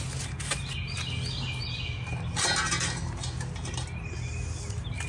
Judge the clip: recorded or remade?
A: recorded